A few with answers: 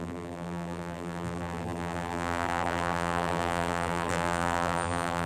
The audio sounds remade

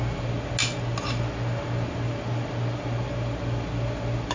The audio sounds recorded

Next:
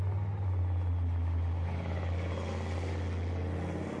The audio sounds recorded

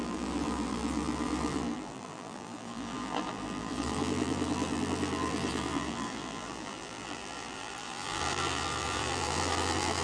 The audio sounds remade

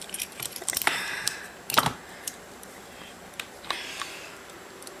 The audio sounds remade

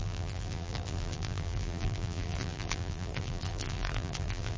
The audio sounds remade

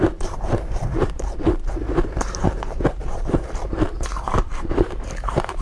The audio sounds remade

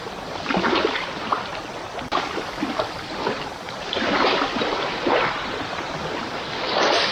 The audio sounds remade